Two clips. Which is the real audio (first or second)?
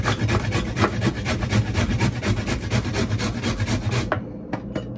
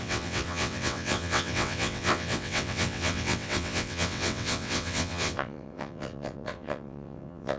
first